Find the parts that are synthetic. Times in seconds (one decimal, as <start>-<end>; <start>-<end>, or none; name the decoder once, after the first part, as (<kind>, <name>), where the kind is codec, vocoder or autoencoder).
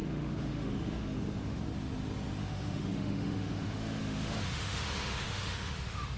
0.0-1.6 (autoencoder, DAC-VAE); 2.4-6.2